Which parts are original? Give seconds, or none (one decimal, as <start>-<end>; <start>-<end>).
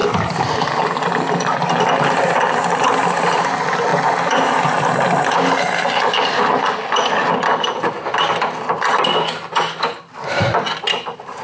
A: 0.0-11.4